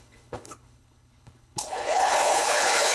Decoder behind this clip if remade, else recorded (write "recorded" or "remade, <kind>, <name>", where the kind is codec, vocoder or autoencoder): remade, codec, HILCodec